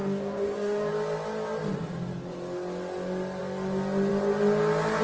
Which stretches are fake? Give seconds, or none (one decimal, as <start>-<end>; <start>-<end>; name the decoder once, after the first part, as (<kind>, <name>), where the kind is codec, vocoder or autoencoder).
0.0-0.9 (codec, DAC)